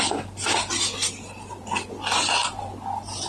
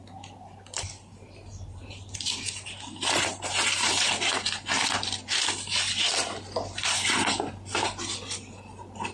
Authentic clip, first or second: first